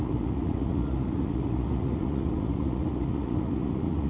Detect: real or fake fake